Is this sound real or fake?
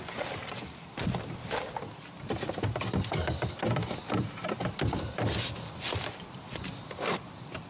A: real